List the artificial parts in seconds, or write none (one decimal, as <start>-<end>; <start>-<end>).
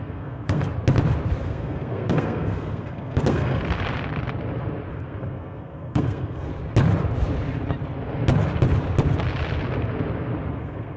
0.0-0.6; 1.4-3.6; 4.9-6.5; 10.5-11.0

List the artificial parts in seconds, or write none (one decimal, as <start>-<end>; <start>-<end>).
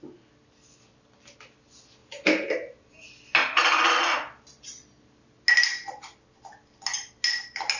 none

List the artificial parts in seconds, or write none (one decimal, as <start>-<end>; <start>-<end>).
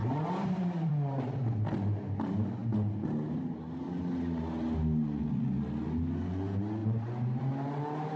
0.0-0.9; 6.8-7.4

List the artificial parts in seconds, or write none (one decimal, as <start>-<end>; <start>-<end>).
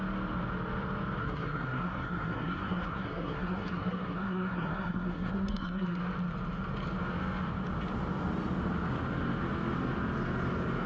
1.2-6.0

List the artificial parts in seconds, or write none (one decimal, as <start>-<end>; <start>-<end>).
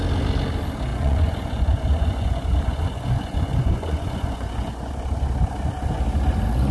0.9-4.9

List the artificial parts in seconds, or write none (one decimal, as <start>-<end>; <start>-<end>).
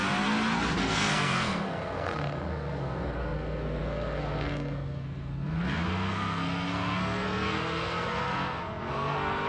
0.8-9.5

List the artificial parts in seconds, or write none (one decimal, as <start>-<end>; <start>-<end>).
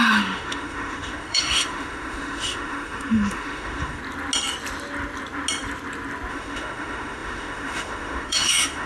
0.0-4.0; 6.3-8.9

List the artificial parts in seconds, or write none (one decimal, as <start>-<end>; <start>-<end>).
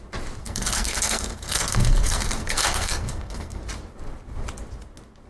0.4-3.6